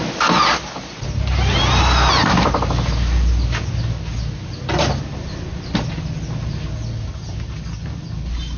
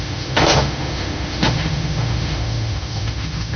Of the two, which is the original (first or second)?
first